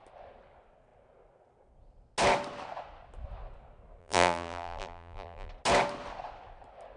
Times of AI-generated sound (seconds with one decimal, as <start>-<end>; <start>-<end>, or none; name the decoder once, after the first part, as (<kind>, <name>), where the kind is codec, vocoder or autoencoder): 4.0-5.5 (vocoder, BigVGAN v2)